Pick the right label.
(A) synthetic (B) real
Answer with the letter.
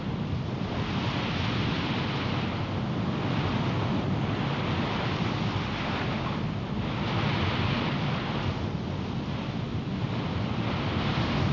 B